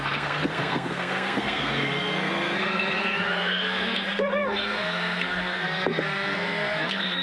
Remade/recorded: remade